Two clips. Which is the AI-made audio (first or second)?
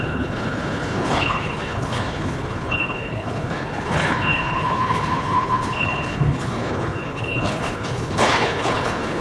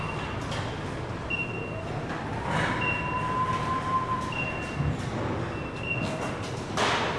first